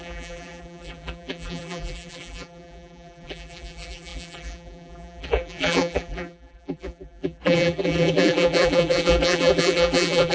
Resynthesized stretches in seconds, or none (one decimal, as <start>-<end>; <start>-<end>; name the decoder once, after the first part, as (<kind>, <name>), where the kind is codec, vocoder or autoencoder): 0.0-10.3 (vocoder, BigVGAN v2)